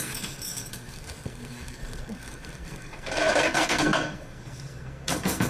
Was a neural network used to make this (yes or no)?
yes